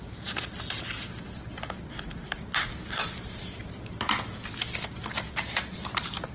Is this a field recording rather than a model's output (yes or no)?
yes